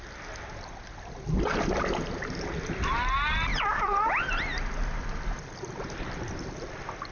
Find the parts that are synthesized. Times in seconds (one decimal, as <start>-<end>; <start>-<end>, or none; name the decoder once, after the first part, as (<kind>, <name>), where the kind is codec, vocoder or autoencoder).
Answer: 3.5-4.1 (vocoder, BigVGAN v2)